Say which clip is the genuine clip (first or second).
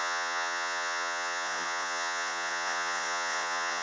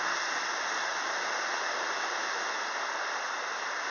second